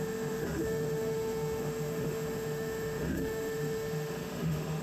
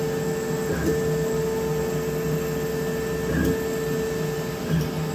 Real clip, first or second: second